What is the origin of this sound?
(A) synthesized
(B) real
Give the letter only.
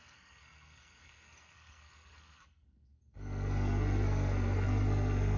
A